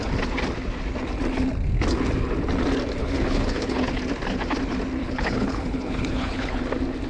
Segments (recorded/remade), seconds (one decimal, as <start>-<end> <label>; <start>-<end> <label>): 0.0-3.0 recorded; 3.0-4.0 remade; 4.0-5.0 recorded; 5.0-6.6 remade; 6.6-7.1 recorded